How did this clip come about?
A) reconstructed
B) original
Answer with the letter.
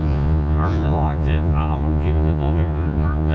A